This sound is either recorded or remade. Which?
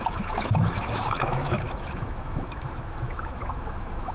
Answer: remade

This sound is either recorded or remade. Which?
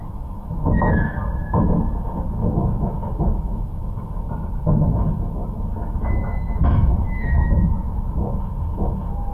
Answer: remade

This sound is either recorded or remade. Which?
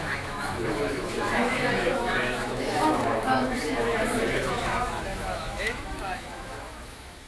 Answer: remade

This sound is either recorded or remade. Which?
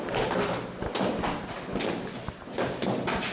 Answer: recorded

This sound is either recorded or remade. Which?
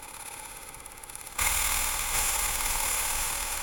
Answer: remade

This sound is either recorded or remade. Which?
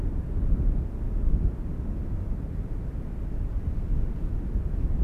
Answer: recorded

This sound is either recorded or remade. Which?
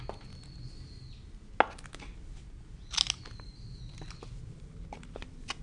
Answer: recorded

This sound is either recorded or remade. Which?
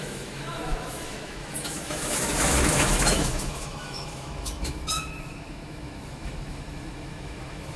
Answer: remade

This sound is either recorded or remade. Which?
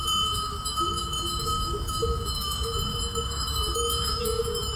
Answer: remade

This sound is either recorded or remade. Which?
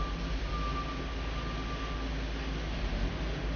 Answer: recorded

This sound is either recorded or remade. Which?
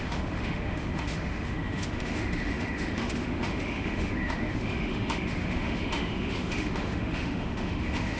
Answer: remade